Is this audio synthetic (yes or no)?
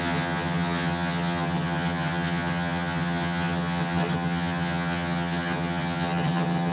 yes